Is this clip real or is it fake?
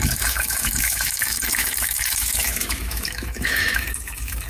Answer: fake